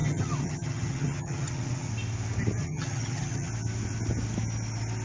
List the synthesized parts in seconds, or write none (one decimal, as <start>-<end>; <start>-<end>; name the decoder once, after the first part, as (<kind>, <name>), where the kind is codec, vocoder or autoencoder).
0.0-1.9 (vocoder, HiFi-GAN); 2.6-3.5